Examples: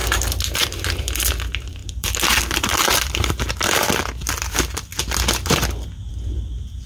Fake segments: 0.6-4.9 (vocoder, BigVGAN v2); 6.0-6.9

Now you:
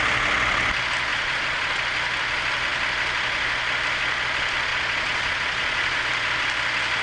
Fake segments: 1.1-1.8 (vocoder, Vocos); 4.7-6.0

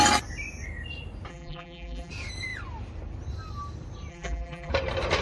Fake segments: 1.3-2.1 (vocoder, BigVGAN v2); 4.1-4.7

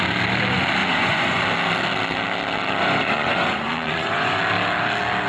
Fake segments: 0.8-1.4 (vocoder, Vocos); 2.8-4.4

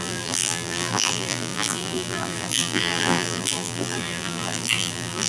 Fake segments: 0.0-5.3 (vocoder, BigVGAN v2)

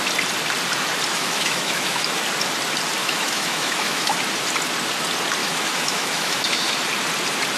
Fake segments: 1.1-2.2 (autoencoder, DAC-VAE); 3.0-4.2; 5.4-6.7

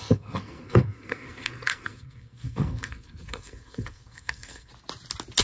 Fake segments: 0.0-4.7 (codec, SNAC)